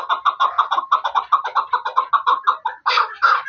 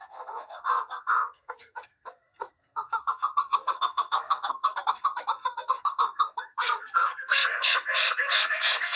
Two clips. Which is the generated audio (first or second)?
second